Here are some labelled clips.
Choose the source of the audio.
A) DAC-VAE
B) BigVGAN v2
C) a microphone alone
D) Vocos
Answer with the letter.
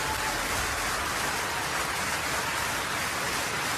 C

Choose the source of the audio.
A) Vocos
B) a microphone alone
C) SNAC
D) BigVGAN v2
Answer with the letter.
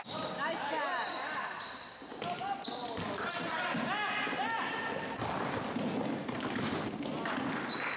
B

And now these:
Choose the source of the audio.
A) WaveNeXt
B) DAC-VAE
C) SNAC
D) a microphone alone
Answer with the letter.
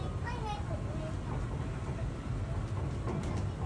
D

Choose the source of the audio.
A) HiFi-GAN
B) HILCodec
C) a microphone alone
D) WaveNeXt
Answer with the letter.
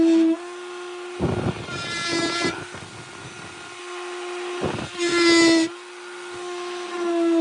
C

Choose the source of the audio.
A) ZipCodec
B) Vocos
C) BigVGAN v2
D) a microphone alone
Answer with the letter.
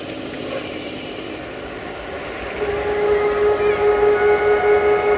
D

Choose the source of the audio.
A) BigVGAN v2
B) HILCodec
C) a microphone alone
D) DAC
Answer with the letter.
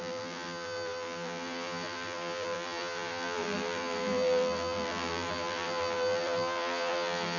A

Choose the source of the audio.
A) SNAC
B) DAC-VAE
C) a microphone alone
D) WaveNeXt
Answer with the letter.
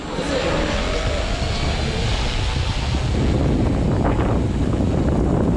C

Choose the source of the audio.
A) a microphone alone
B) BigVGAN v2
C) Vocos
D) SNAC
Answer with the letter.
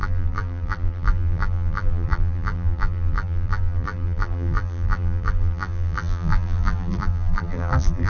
B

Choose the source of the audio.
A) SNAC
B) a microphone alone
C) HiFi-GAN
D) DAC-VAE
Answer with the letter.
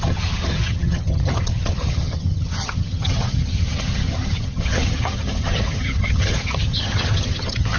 C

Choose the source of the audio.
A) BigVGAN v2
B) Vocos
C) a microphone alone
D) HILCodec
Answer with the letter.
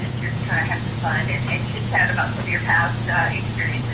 B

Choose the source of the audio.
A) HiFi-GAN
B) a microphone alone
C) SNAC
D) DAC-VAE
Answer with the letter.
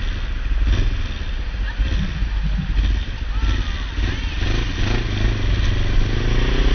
B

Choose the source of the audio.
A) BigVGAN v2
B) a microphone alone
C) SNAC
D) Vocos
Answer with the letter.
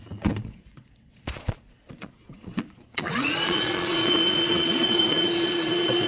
D